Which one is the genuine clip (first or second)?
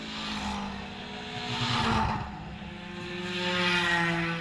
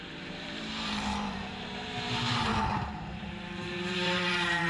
first